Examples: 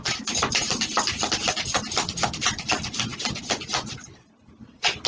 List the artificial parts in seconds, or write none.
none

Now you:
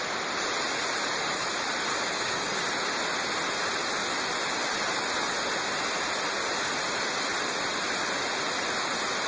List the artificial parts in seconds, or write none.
1.9-2.6

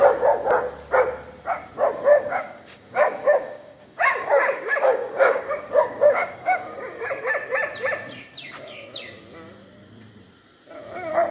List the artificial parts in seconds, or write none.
2.1-7.2

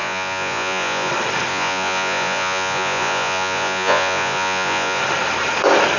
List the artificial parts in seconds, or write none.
0.0-1.1; 1.5-5.0

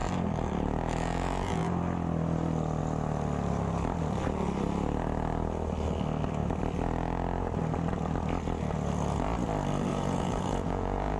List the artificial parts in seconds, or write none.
9.9-11.2

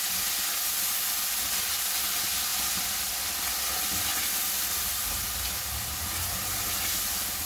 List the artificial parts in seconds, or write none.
none

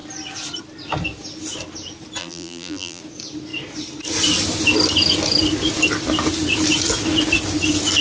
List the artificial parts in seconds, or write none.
2.2-3.0